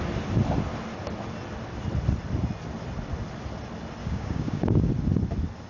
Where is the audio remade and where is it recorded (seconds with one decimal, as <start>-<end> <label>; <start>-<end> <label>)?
0.0-4.0 recorded; 4.0-4.9 remade; 4.9-5.7 recorded